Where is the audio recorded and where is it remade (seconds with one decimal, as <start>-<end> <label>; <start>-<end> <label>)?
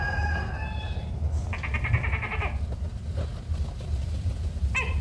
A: 0.0-5.0 recorded